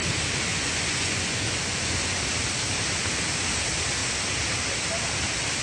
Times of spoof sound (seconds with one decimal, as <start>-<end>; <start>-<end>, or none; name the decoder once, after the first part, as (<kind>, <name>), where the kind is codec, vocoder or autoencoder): 0.5-2.2 (vocoder, Vocos)